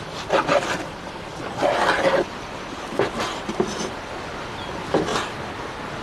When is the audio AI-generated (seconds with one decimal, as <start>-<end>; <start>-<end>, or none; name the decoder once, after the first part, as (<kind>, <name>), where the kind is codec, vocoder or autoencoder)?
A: none